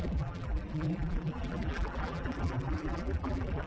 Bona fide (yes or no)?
no